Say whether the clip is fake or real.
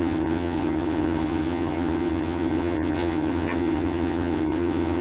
fake